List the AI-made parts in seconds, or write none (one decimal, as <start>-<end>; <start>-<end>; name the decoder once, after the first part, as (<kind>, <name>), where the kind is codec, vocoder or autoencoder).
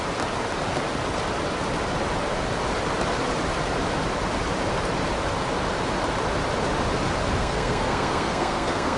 7.4-9.0 (codec, SNAC)